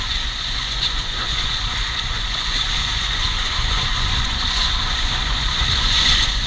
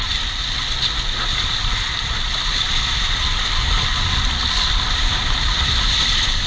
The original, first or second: second